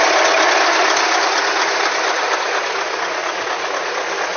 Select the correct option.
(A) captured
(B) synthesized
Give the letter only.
A